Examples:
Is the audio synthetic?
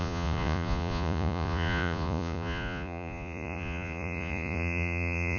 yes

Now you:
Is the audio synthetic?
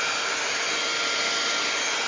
no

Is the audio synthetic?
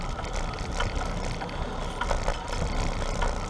no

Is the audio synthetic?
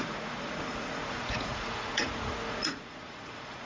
yes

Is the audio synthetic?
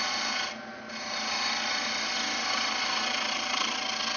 no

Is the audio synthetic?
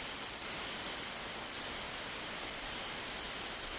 no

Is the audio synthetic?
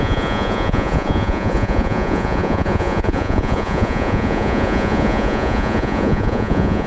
yes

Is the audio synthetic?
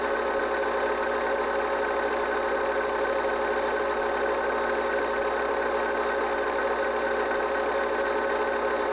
no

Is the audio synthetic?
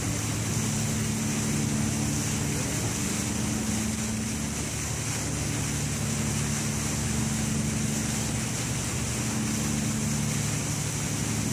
no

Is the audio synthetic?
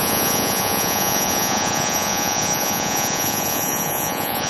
yes